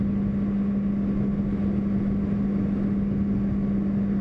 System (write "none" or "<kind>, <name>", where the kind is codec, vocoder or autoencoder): none